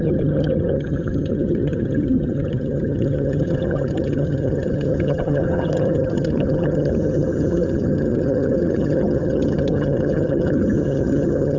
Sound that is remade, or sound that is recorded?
remade